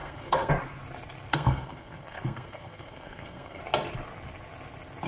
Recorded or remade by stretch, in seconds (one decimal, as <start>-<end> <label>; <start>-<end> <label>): 0.0-0.5 remade; 0.5-1.3 recorded; 1.3-3.6 remade; 3.6-5.1 recorded